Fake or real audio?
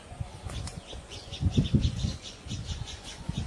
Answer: fake